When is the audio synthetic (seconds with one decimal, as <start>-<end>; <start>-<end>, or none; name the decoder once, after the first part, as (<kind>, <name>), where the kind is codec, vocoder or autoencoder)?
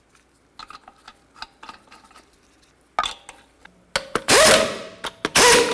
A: none